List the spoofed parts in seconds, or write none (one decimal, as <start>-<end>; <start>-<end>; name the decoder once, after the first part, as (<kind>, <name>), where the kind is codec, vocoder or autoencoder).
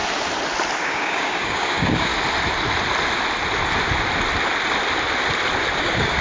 0.8-2.1 (codec, DAC); 5.8-6.2